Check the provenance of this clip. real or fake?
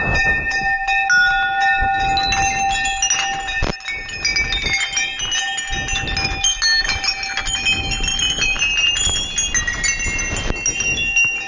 real